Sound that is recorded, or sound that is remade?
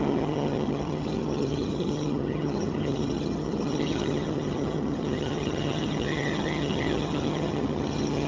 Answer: remade